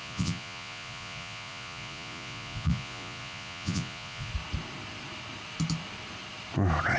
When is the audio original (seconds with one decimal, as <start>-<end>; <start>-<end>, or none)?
4.3-7.0